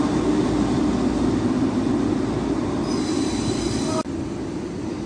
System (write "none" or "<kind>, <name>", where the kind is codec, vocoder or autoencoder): none